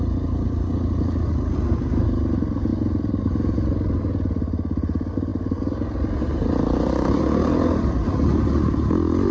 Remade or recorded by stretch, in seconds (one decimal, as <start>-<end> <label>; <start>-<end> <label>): 0.0-9.3 recorded